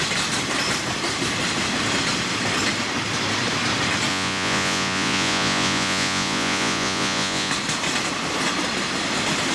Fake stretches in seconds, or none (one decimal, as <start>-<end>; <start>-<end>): 4.1-7.5